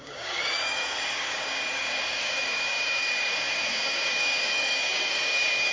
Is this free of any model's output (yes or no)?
no